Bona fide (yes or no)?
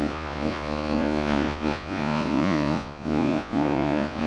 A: no